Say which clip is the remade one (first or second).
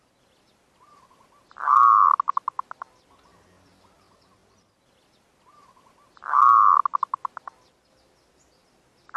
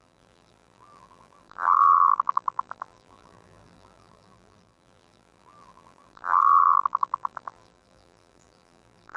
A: second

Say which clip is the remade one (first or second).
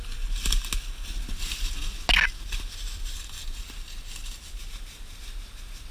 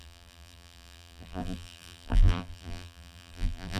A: second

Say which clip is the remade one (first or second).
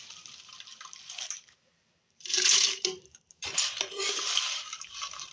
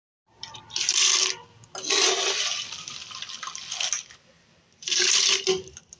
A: first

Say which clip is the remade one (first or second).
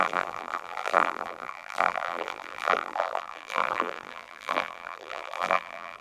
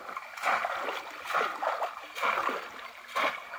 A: first